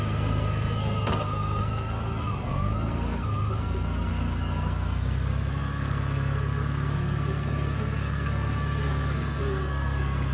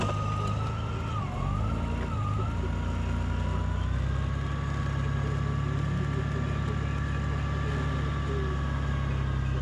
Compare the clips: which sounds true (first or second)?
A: second